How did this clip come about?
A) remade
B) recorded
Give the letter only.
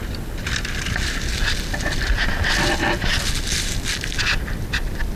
B